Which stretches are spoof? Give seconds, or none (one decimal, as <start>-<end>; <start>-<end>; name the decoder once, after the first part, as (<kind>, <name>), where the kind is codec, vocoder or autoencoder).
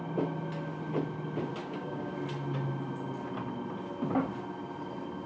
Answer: 1.6-2.1 (codec, DAC)